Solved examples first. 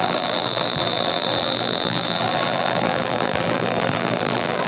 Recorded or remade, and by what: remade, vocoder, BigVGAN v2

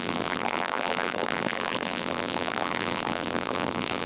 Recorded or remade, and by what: remade, vocoder, BigVGAN v2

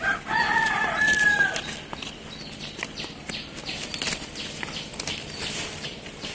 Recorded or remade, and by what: remade, vocoder, BigVGAN v2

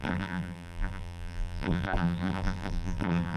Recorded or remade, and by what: remade, vocoder, BigVGAN v2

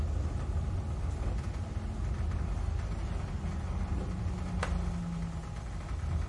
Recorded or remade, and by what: recorded